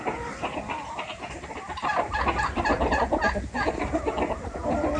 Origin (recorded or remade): recorded